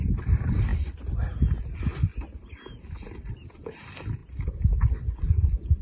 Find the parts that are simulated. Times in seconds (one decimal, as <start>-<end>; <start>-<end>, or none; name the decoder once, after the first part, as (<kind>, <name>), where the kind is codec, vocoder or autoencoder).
none